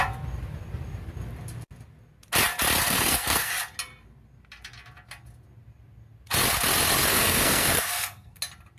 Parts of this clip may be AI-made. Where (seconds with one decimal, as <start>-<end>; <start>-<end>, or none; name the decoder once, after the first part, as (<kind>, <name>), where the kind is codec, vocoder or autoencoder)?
2.8-3.5 (codec, SNAC); 7.1-8.4

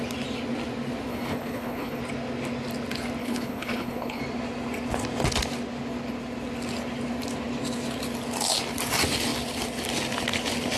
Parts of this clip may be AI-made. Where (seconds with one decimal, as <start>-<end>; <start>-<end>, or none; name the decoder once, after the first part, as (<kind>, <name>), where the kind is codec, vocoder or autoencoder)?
1.1-2.0 (codec, HILCodec); 3.2-4.2